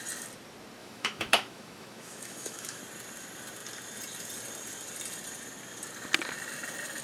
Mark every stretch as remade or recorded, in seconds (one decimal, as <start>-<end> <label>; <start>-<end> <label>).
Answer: 0.0-0.8 recorded; 0.8-2.8 remade; 2.8-7.0 recorded